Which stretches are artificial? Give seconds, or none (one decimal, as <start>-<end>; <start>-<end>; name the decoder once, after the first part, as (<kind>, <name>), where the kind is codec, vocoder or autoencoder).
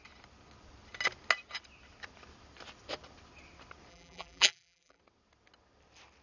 3.9-5.0 (vocoder, BigVGAN v2)